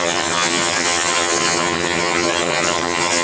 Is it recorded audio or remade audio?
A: remade